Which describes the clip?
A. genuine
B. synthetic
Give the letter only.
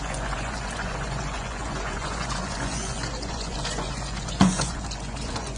B